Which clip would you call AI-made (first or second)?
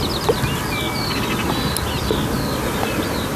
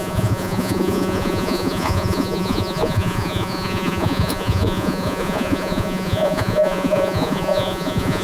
second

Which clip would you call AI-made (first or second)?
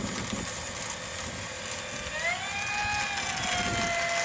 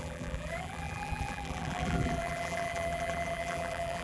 second